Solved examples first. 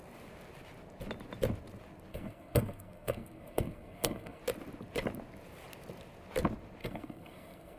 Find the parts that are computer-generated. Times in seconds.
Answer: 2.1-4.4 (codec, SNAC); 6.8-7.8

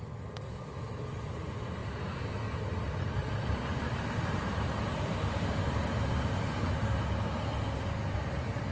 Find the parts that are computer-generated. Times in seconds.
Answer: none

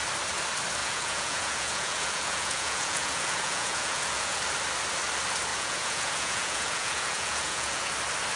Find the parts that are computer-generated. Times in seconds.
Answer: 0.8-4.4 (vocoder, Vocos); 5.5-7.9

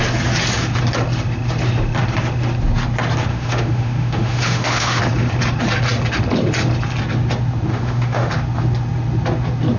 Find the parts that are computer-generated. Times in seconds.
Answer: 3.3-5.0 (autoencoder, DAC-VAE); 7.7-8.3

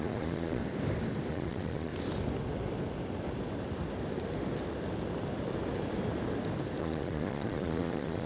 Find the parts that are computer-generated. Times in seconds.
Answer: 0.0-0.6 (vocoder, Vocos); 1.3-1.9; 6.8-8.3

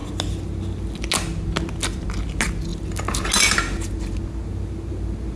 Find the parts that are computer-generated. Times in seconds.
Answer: none

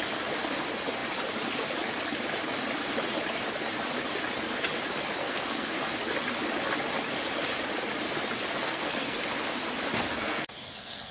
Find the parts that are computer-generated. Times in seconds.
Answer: 5.2-5.8 (codec, SNAC); 8.6-9.2; 10.1-11.1